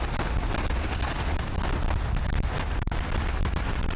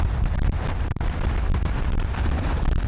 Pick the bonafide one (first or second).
first